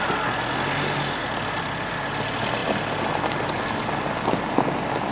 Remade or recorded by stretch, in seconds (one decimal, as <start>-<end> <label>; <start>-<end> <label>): 0.0-1.2 recorded; 1.2-1.9 remade; 1.9-5.1 recorded